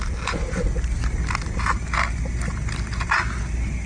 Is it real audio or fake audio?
real